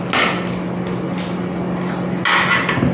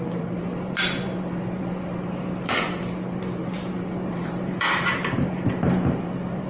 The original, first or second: first